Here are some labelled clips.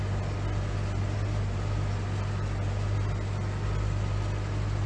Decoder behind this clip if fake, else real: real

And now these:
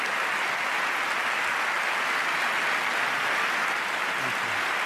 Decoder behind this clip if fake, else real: real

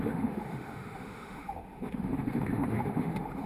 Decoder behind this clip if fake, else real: fake, autoencoder, DAC-VAE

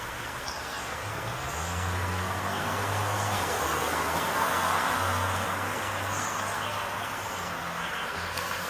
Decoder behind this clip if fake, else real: fake, codec, SNAC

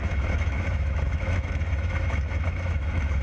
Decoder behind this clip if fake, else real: fake, autoencoder, DAC-VAE